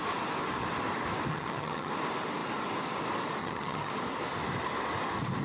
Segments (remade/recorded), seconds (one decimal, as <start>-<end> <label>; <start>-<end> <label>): 0.0-1.3 recorded; 1.3-1.9 remade; 1.9-3.4 recorded; 3.4-3.9 remade; 3.9-5.4 recorded